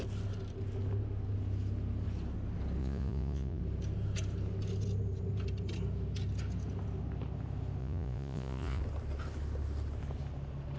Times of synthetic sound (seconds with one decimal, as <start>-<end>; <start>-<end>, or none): 2.8-3.6; 7.8-8.8